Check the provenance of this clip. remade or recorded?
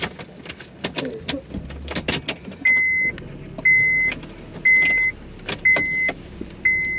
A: recorded